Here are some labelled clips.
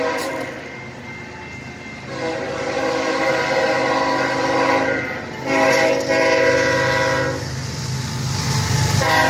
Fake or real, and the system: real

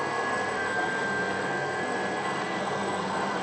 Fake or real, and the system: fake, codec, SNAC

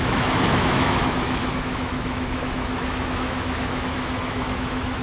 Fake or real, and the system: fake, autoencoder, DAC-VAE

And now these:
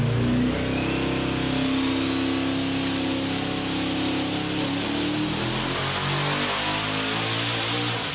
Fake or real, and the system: real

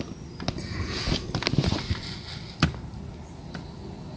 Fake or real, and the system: real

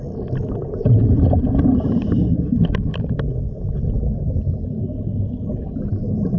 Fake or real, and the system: real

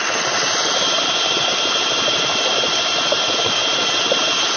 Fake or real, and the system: fake, vocoder, BigVGAN v2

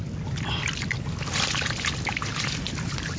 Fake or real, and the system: real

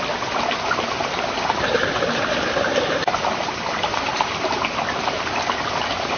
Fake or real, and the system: real